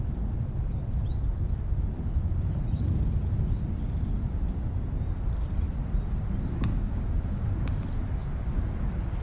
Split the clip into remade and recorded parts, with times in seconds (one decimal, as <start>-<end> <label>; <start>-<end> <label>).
0.0-6.7 recorded; 6.7-7.6 remade; 7.6-9.2 recorded